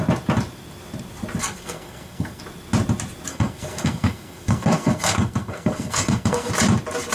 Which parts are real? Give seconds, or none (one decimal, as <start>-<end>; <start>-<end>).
0.0-1.4; 2.4-3.3; 6.5-7.1